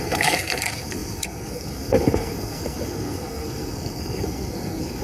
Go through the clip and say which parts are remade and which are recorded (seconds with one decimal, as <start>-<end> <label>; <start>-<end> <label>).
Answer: 0.0-5.0 remade